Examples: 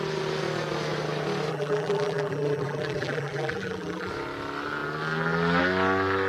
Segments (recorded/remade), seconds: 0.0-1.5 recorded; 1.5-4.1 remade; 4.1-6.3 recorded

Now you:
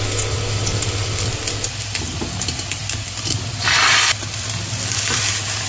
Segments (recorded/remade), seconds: 0.0-0.7 recorded; 0.7-3.9 remade; 3.9-5.7 recorded

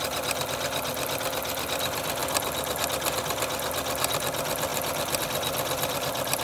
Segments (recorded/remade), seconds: 0.0-2.2 recorded; 2.2-2.8 remade; 2.8-4.7 recorded; 4.7-5.2 remade; 5.2-6.4 recorded

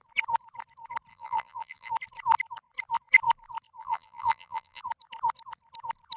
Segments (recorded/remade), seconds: 0.0-1.1 recorded; 1.1-1.9 remade; 1.9-3.8 recorded; 3.8-4.8 remade; 4.8-6.2 recorded

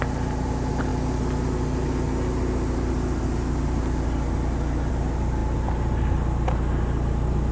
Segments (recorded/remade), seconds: 0.0-7.5 recorded

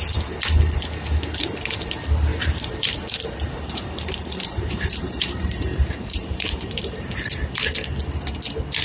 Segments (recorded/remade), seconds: 0.0-2.3 recorded; 2.3-7.5 remade; 7.5-8.8 recorded